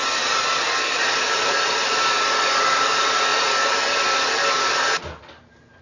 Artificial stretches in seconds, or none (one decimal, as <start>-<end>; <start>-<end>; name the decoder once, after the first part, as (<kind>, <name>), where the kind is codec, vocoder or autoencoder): none